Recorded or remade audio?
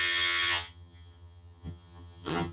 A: remade